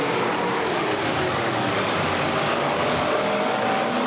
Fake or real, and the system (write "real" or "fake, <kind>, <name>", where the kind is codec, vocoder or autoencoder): fake, codec, DAC